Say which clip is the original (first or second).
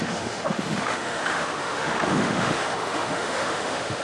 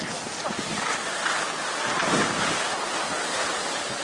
second